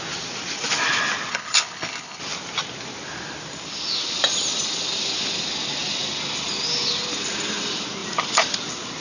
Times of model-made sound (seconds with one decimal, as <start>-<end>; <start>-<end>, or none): 1.3-2.2